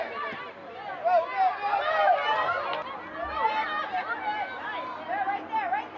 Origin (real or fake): real